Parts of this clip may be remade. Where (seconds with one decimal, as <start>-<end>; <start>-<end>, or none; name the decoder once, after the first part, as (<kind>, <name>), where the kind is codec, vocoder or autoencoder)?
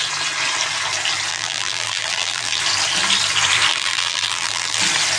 1.3-2.6 (vocoder, BigVGAN v2); 3.7-4.8